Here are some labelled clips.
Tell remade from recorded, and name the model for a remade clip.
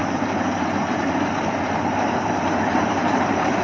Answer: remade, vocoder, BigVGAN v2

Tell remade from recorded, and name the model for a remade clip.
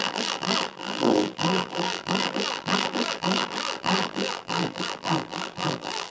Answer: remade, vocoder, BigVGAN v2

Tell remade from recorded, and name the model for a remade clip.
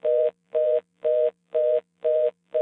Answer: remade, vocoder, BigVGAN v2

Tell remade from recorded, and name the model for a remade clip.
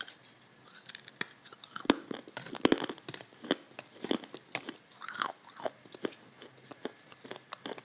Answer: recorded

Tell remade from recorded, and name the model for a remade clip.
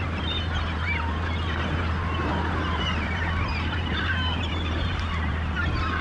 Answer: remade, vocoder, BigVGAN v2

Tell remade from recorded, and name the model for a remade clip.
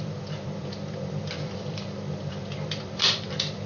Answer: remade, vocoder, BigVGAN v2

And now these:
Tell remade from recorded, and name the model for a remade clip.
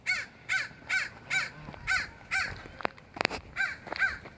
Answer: recorded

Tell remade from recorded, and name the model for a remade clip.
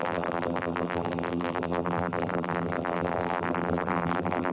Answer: remade, vocoder, BigVGAN v2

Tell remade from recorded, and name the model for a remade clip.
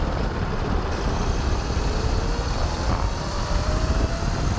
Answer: remade, vocoder, BigVGAN v2